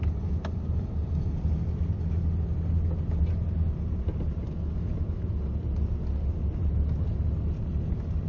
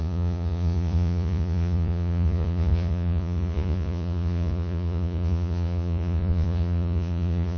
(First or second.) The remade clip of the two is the second